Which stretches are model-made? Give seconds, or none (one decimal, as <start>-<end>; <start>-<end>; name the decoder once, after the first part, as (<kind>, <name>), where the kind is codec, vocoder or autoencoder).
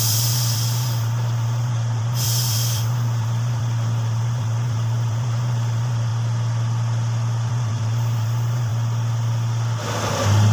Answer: 0.0-6.1 (vocoder, BigVGAN v2); 7.5-8.7; 10.1-10.5